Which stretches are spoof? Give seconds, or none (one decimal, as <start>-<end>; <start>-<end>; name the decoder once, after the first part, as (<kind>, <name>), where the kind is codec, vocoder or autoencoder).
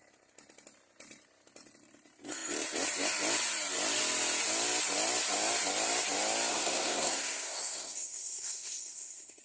6.5-9.4 (codec, SNAC)